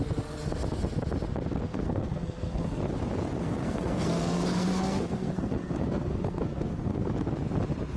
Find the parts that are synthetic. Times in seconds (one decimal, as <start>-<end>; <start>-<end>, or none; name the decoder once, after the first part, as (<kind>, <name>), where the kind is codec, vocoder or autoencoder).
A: 1.7-2.9 (codec, SNAC); 3.4-7.1